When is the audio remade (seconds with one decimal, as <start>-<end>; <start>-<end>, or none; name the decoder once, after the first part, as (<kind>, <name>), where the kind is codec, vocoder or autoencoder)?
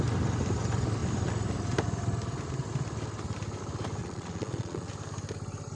4.0-4.9 (vocoder, Vocos)